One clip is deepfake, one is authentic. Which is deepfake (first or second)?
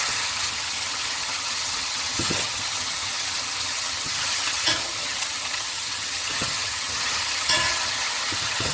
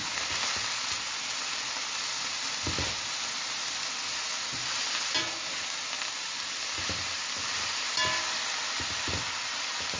first